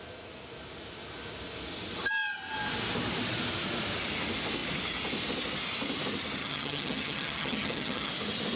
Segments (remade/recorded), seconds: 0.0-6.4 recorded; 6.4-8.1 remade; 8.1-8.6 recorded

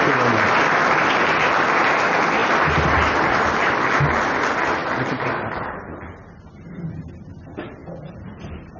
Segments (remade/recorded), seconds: 0.0-8.8 recorded

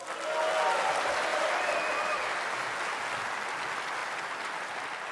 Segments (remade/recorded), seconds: 0.0-5.1 recorded

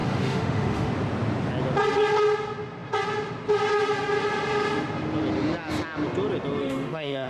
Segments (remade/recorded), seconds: 0.0-0.9 remade; 0.9-6.6 recorded; 6.6-7.3 remade

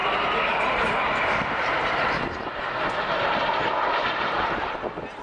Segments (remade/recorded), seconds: 0.0-5.2 recorded